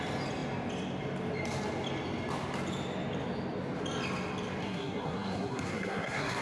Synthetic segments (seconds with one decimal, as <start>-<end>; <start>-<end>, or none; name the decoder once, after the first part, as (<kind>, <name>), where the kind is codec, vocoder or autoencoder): 4.6-6.4 (codec, SNAC)